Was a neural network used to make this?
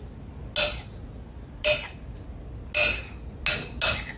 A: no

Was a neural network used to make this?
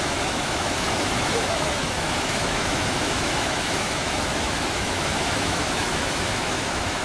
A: yes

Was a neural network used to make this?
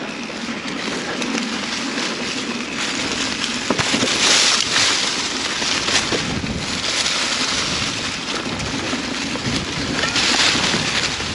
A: no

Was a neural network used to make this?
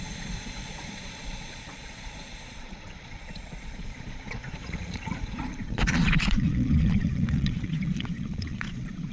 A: yes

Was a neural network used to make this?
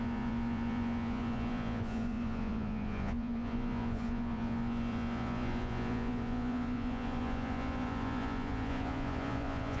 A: yes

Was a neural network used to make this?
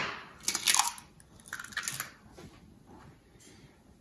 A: no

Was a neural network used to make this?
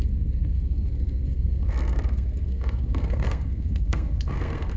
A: yes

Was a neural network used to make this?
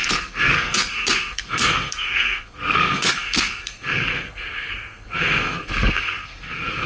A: yes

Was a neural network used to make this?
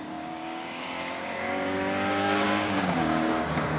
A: yes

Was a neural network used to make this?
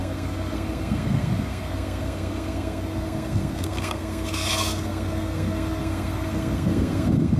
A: yes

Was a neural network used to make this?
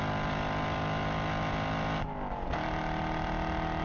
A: no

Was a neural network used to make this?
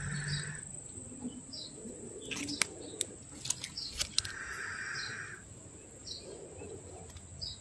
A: no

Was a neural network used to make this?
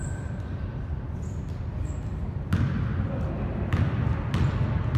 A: no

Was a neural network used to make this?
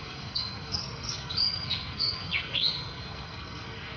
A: yes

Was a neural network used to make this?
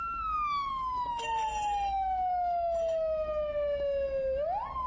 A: no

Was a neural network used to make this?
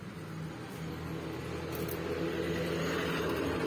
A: no